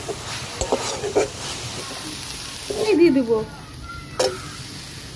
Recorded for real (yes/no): yes